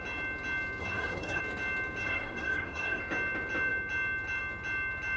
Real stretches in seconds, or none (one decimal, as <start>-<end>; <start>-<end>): 0.0-0.8; 1.4-2.0; 3.0-5.2